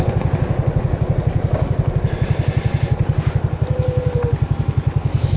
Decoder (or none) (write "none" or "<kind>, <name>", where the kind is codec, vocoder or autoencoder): none